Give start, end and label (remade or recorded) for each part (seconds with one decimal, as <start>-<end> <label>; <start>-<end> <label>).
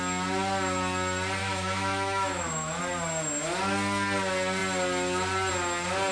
0.0-1.4 recorded; 1.4-2.8 remade; 2.8-6.1 recorded